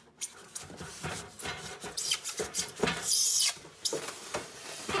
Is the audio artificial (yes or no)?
yes